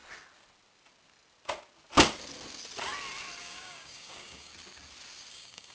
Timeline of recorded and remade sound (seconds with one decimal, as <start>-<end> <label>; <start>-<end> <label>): 0.0-3.4 recorded; 3.4-4.5 remade; 4.5-5.3 recorded; 5.3-5.7 remade